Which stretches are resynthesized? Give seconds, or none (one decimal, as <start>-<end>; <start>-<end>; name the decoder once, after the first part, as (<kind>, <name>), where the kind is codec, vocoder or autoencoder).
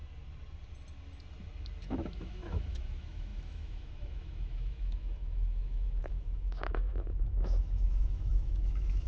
1.8-9.1 (autoencoder, DAC-VAE)